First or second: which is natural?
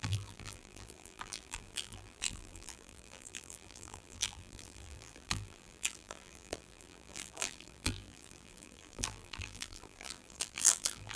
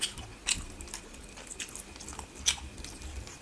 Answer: second